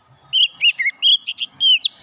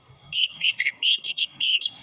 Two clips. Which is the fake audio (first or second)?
second